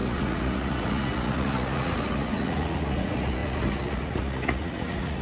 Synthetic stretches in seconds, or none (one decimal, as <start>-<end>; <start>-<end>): 0.0-5.2